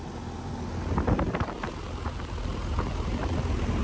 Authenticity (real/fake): real